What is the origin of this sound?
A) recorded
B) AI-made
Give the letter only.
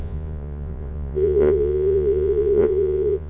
B